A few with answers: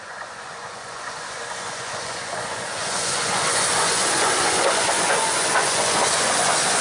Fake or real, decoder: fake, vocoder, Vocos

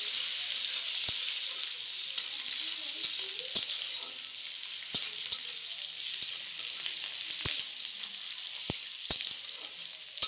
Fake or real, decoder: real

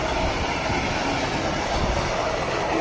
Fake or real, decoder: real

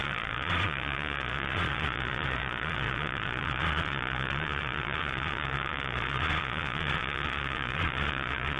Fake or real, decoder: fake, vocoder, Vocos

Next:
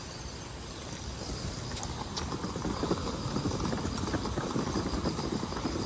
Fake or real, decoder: real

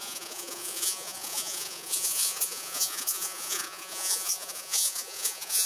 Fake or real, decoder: fake, vocoder, Vocos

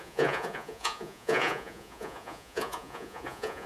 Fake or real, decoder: fake, vocoder, Vocos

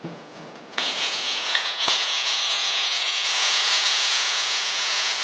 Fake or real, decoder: fake, vocoder, Vocos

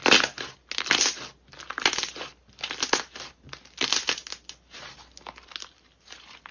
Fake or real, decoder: real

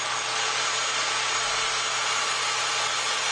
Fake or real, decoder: real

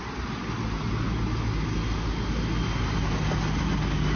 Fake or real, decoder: real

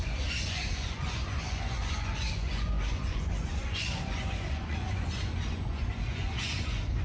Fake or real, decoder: fake, vocoder, Vocos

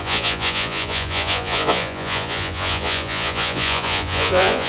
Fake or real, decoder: fake, vocoder, Vocos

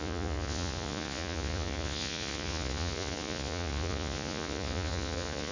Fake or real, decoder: fake, vocoder, Vocos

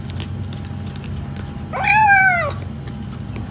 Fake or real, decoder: real